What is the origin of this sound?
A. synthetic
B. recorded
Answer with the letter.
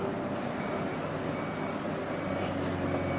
B